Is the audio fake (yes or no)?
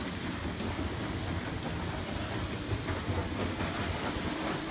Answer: no